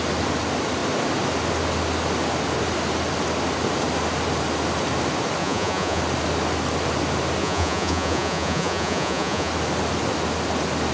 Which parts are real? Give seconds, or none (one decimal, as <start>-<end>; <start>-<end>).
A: 0.0-5.4; 6.0-7.4; 9.5-10.9